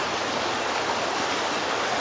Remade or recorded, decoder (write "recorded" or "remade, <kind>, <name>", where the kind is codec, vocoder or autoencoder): recorded